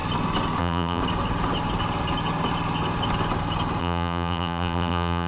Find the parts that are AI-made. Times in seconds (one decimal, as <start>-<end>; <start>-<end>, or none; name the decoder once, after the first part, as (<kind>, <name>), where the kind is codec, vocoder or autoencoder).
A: 0.6-1.0 (vocoder, BigVGAN v2); 3.8-5.3